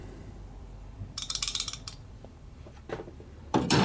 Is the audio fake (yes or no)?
yes